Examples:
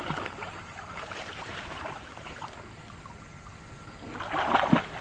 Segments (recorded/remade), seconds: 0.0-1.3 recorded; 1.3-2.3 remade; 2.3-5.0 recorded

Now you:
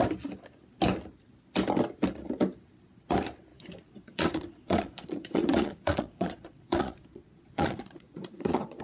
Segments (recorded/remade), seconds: 0.0-3.5 recorded; 3.5-8.8 remade

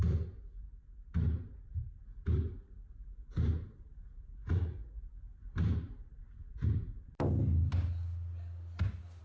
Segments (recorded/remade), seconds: 0.0-4.4 recorded; 4.4-5.0 remade; 5.0-9.2 recorded

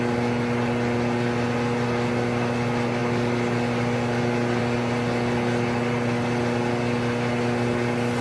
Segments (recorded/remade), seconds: 0.0-8.2 recorded

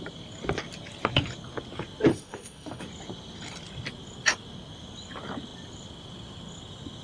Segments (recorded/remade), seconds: 0.0-2.1 recorded; 2.1-2.8 remade; 2.8-7.0 recorded